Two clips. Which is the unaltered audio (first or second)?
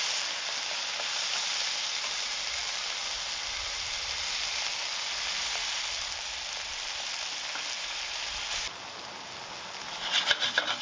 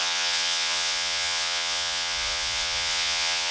first